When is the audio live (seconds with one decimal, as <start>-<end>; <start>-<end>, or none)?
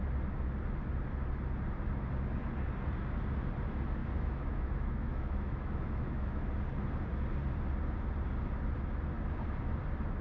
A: 0.0-4.0; 6.4-10.2